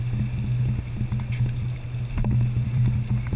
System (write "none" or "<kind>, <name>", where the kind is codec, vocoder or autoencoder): none